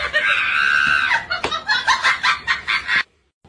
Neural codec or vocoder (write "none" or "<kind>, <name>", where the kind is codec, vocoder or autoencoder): none